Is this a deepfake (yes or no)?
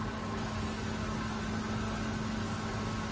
no